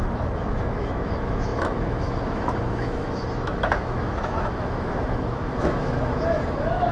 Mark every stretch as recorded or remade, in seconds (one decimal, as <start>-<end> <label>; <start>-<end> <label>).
0.0-6.9 remade